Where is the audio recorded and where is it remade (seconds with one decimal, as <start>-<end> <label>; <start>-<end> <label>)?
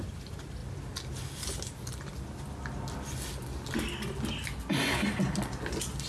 0.0-6.1 recorded